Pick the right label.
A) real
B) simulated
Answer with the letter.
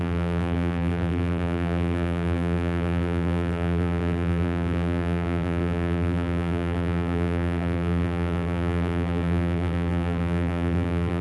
B